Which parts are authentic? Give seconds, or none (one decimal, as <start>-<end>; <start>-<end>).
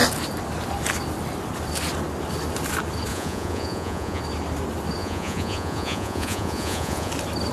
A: 0.0-3.1; 4.2-5.0; 7.1-7.5